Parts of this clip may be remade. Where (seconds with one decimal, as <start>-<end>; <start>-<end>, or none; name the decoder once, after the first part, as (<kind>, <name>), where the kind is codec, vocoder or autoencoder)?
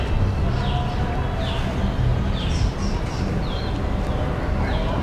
2.1-3.3 (vocoder, BigVGAN v2)